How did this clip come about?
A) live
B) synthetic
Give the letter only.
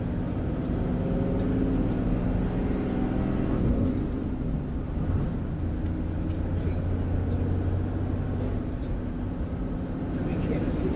A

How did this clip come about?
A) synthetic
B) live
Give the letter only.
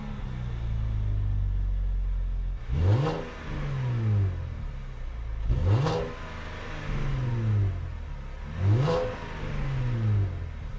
B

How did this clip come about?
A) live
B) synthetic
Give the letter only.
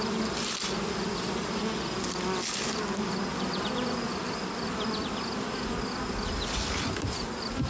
A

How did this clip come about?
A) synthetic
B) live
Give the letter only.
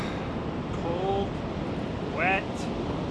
A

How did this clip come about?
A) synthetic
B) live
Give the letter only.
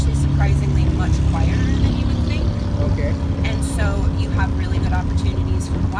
B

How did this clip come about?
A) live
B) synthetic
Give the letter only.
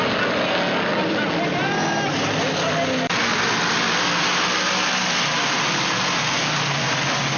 A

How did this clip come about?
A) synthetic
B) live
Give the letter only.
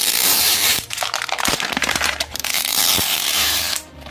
A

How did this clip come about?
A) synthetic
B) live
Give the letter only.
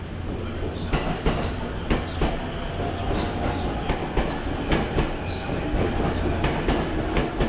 B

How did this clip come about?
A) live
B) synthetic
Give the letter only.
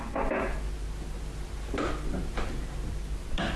A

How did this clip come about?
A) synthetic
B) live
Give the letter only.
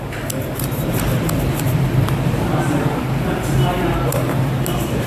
A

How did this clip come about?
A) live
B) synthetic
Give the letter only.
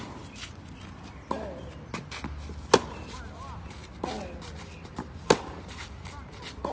A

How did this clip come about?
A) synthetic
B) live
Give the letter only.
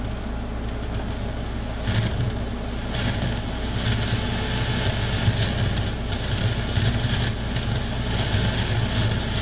B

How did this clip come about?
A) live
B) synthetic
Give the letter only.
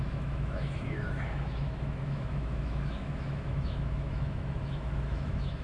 B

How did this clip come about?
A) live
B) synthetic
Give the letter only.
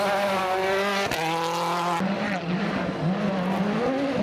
A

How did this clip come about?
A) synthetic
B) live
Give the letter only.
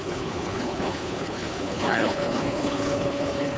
A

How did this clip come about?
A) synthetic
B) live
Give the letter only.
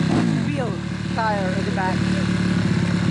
B